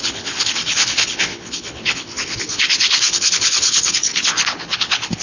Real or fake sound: fake